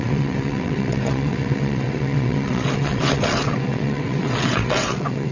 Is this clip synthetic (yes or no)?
yes